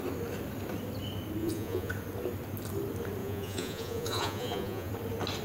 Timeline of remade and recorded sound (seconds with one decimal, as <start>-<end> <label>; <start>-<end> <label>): 0.0-1.4 recorded; 1.4-1.9 remade; 1.9-3.2 recorded; 3.2-4.9 remade; 4.9-5.4 recorded